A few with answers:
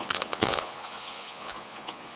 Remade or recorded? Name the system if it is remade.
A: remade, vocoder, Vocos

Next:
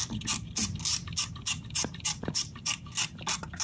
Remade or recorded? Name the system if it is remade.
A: recorded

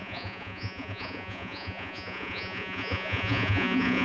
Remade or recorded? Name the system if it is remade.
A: remade, vocoder, Vocos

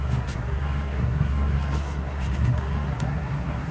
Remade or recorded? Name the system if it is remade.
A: remade, codec, SNAC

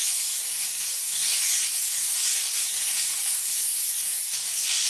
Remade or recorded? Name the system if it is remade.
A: remade, codec, DAC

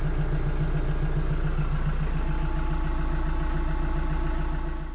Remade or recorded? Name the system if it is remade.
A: recorded